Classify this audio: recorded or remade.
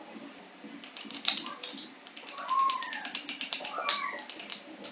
recorded